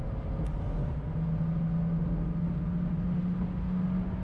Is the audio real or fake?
real